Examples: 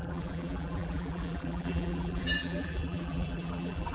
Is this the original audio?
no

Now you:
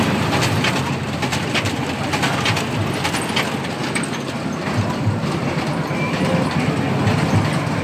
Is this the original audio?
yes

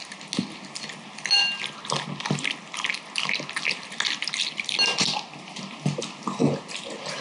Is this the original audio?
yes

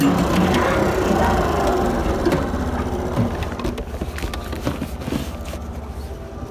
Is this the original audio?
yes